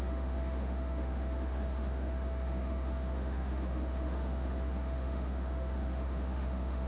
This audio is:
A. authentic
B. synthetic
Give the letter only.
B